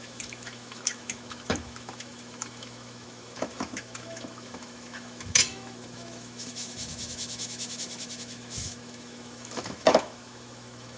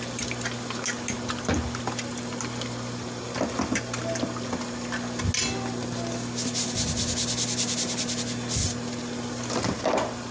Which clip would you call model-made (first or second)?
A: first